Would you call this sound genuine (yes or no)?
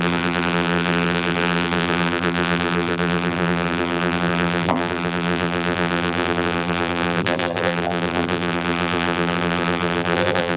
no